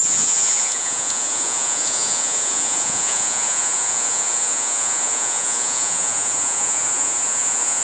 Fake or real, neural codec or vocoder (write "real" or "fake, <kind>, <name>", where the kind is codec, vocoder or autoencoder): fake, vocoder, Vocos